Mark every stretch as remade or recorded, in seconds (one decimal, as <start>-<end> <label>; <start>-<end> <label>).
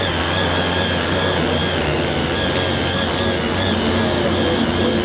0.0-5.0 recorded